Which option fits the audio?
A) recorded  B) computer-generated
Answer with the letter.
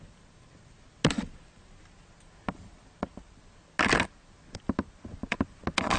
A